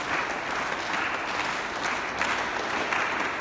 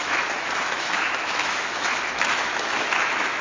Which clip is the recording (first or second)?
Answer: first